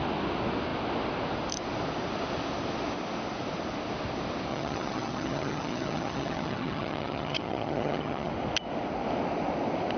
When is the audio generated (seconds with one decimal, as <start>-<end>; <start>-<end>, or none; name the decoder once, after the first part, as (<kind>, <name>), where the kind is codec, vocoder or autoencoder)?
4.5-8.3 (vocoder, HiFi-GAN)

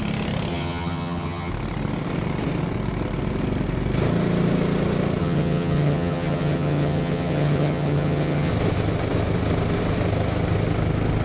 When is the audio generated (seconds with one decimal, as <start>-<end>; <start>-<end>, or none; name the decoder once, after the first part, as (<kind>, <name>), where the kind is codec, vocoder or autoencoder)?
0.5-1.5 (vocoder, HiFi-GAN); 5.2-8.5

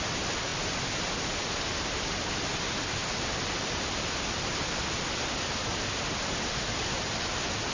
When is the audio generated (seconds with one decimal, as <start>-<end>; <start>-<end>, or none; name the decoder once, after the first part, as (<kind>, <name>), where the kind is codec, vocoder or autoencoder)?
none

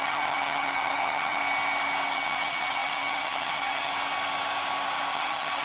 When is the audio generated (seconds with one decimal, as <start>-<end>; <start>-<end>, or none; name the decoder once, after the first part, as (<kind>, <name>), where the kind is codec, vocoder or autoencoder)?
0.0-1.4 (vocoder, HiFi-GAN); 2.1-3.9; 5.1-5.6

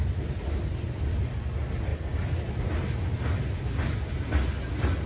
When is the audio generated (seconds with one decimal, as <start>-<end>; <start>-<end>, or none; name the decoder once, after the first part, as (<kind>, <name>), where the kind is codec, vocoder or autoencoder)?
none

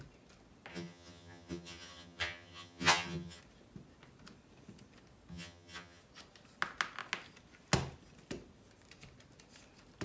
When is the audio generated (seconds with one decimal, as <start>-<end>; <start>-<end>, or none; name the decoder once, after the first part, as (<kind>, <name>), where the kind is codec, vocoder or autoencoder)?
0.7-3.4 (vocoder, HiFi-GAN); 5.3-6.0

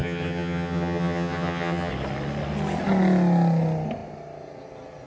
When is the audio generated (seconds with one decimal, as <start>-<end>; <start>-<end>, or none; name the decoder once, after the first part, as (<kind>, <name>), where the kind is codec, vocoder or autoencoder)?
0.0-1.9 (vocoder, HiFi-GAN)